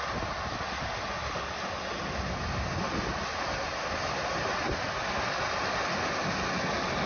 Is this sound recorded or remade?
recorded